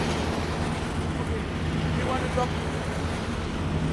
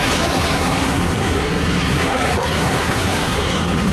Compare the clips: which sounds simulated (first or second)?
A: second